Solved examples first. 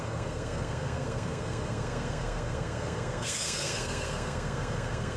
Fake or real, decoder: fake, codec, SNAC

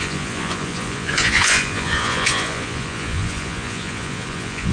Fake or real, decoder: fake, vocoder, Vocos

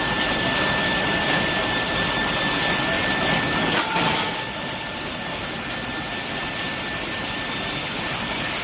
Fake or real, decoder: fake, vocoder, BigVGAN v2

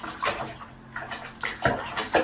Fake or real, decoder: real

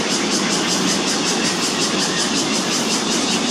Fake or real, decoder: real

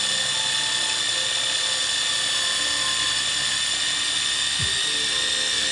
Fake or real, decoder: real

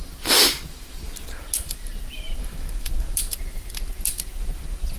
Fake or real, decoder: real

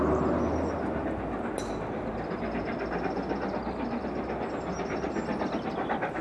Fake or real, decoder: real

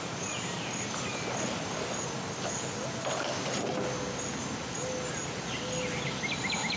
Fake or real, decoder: real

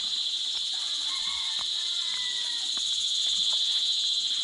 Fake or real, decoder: real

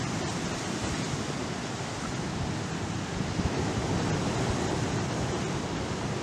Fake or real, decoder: real